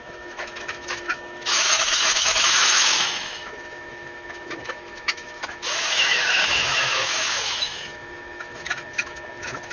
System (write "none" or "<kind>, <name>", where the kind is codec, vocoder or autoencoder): autoencoder, DAC-VAE